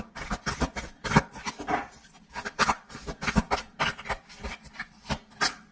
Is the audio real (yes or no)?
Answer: yes